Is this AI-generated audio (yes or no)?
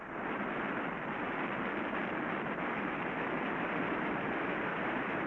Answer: yes